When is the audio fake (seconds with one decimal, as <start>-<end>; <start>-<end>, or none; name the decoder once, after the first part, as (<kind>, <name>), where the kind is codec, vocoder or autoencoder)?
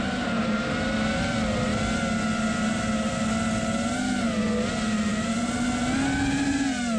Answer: none